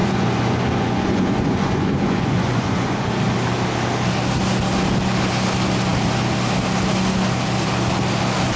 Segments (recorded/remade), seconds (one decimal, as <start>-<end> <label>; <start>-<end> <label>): 0.0-3.1 remade; 3.1-8.6 recorded